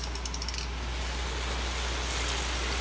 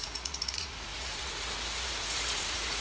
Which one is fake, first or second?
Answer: second